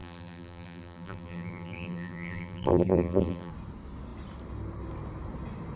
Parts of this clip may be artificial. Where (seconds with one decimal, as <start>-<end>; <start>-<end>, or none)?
0.0-3.5